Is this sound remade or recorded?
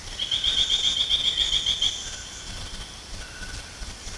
recorded